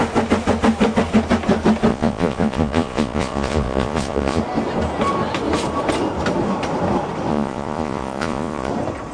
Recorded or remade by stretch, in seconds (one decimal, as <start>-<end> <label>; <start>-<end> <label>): 0.0-1.9 recorded; 1.9-4.4 remade; 4.4-7.3 recorded; 7.3-8.7 remade; 8.7-9.1 recorded